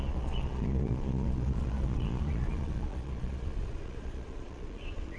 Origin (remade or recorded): remade